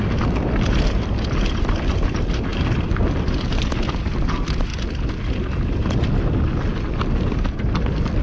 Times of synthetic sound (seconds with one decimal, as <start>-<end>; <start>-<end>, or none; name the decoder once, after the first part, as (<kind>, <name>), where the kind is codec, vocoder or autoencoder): 0.0-4.7 (vocoder, BigVGAN v2); 7.0-8.2